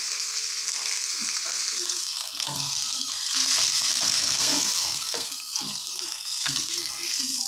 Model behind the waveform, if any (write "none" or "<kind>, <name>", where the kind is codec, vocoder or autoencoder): codec, SNAC